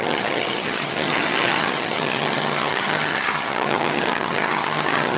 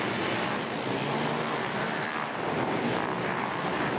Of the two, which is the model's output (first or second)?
first